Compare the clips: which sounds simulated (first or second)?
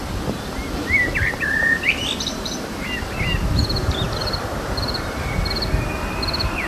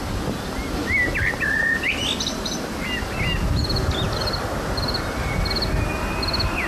first